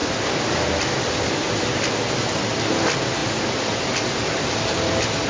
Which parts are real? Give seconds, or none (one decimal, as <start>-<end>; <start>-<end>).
0.0-5.3